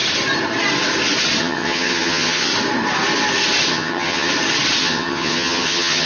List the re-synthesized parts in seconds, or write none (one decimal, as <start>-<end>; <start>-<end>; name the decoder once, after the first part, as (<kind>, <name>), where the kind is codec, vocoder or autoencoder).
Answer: 1.4-2.5 (vocoder, HiFi-GAN); 3.7-4.3; 4.8-6.1